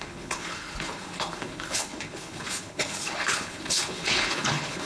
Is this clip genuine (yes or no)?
no